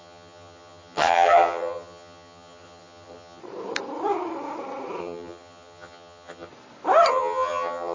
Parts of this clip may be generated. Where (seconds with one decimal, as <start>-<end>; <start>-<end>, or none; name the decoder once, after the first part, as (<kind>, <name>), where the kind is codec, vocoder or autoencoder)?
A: 0.0-3.4 (vocoder, HiFi-GAN); 5.0-6.5; 7.1-7.9